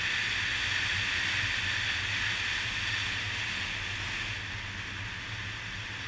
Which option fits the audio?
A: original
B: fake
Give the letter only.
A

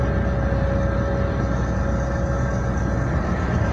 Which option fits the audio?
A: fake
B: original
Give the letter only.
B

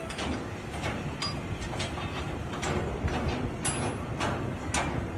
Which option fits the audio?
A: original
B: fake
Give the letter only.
A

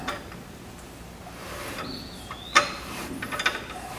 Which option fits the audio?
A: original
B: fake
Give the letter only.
A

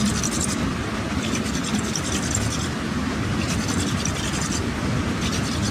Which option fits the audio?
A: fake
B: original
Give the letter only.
B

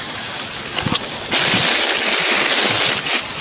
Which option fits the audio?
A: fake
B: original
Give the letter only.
B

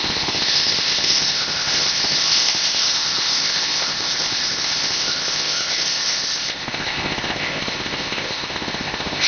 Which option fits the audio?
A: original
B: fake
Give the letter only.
B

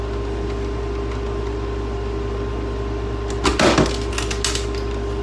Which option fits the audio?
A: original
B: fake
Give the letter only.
A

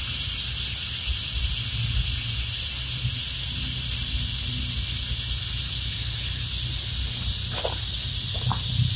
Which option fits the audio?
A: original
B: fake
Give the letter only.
A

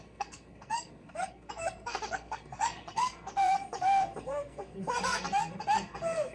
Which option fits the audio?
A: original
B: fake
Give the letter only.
B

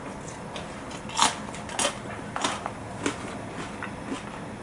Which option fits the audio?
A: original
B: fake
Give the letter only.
A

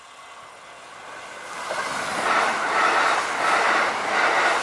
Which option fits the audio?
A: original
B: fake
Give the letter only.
A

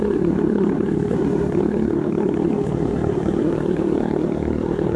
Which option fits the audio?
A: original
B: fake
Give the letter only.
B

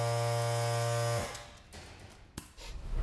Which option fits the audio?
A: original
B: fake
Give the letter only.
A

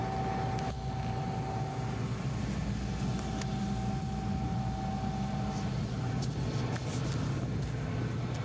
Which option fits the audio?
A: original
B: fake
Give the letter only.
A